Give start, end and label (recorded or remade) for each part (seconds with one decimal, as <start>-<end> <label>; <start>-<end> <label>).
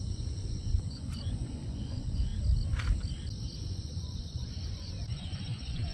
0.0-2.3 remade; 2.3-3.6 recorded; 3.6-5.9 remade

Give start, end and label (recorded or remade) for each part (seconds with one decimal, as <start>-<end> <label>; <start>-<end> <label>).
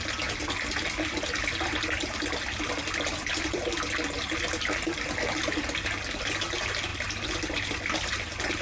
0.0-8.6 recorded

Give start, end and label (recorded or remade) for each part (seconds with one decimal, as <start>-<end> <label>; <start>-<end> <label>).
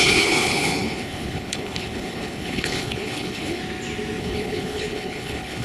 0.0-3.6 remade; 3.6-4.2 recorded; 4.2-5.6 remade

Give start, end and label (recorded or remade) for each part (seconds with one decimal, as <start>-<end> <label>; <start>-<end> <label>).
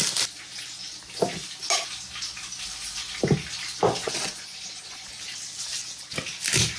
0.0-4.0 recorded; 4.0-5.1 remade; 5.1-6.8 recorded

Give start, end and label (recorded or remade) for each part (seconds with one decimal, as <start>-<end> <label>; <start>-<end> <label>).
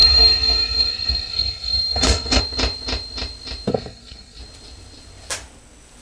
0.0-2.4 remade; 2.4-3.7 recorded; 3.7-4.4 remade; 4.4-6.0 recorded